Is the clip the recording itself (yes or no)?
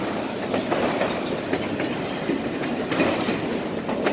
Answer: yes